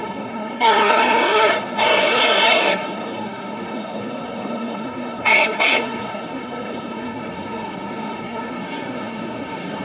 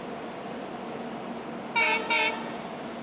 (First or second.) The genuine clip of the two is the second